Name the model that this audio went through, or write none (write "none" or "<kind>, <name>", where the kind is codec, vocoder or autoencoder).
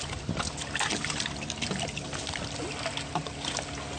none